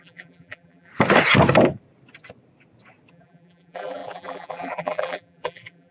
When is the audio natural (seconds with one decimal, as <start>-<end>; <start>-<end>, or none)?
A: 0.9-3.1